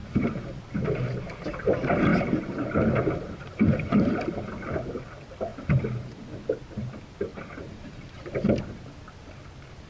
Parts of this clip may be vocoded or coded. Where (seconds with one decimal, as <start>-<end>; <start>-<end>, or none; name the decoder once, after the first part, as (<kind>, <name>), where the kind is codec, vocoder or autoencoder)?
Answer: 0.0-0.6 (vocoder, BigVGAN v2); 2.1-4.5; 5.5-6.2; 7.3-8.3